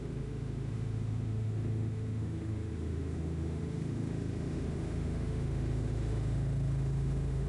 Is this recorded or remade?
remade